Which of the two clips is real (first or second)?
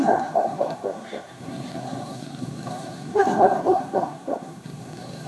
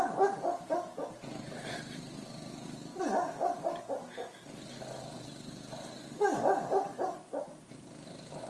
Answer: second